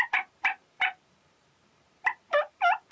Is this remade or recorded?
remade